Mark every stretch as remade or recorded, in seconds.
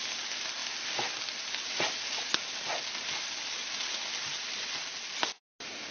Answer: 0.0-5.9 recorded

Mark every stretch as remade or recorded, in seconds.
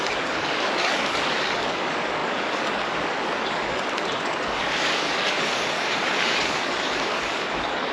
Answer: 0.0-7.9 remade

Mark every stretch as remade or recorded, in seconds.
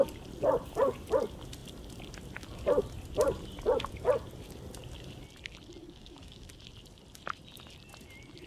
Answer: 0.0-5.8 recorded; 5.8-6.5 remade; 6.5-8.5 recorded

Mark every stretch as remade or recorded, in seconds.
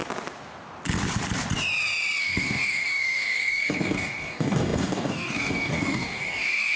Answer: 0.0-2.2 recorded; 2.2-6.8 remade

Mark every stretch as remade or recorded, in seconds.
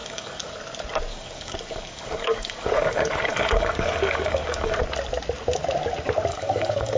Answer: 0.0-0.5 remade; 0.5-1.1 recorded; 1.1-4.8 remade; 4.8-6.3 recorded; 6.3-7.0 remade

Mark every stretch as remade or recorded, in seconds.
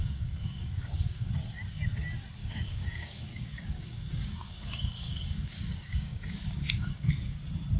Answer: 0.0-1.3 remade; 1.3-2.4 recorded; 2.4-7.1 remade; 7.1-7.8 recorded